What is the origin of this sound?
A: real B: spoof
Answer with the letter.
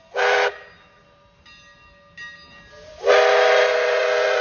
A